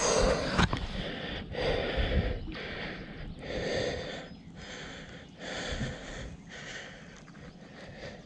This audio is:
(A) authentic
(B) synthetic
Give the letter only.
A